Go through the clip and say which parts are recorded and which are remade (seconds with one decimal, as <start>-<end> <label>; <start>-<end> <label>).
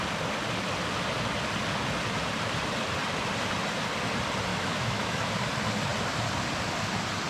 0.0-4.5 recorded; 4.5-5.3 remade; 5.3-7.3 recorded